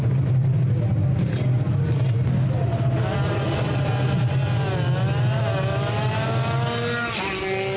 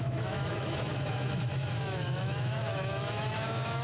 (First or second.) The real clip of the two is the first